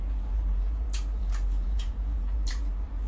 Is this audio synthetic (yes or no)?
yes